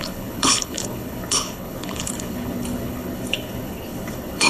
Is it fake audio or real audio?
fake